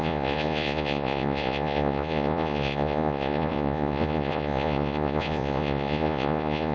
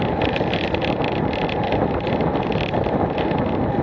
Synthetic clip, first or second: first